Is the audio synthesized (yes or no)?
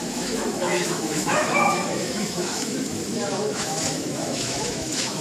yes